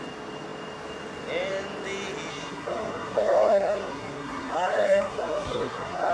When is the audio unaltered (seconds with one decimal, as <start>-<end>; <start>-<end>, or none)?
0.0-2.3